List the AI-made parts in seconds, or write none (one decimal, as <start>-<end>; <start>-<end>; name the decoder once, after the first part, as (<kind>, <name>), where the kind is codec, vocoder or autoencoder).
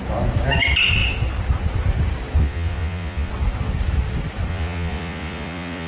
2.4-3.3 (vocoder, Vocos); 4.5-5.9